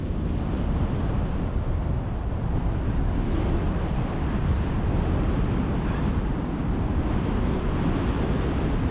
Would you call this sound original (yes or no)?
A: yes